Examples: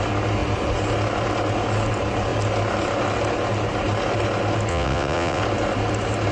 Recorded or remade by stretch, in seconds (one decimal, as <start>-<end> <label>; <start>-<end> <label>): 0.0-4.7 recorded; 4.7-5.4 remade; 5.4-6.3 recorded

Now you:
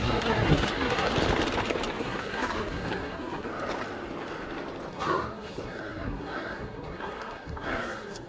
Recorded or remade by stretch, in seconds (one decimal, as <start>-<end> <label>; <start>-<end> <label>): 0.0-1.1 remade; 1.1-2.0 recorded; 2.0-3.5 remade; 3.5-4.9 recorded; 4.9-8.3 remade

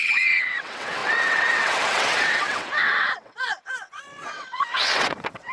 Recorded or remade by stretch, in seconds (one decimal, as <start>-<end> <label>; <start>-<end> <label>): 0.0-5.5 remade

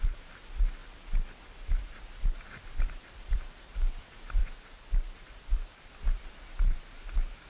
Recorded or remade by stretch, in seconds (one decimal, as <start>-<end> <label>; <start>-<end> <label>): 0.0-0.8 recorded; 0.8-4.0 remade; 4.0-4.4 recorded; 4.4-6.0 remade; 6.0-7.5 recorded